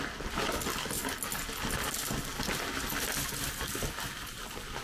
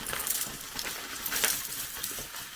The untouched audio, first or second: first